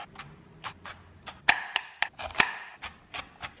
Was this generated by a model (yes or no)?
no